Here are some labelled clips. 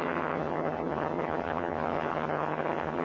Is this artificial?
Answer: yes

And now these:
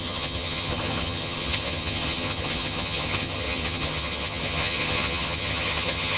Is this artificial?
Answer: yes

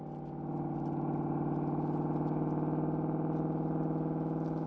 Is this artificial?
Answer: no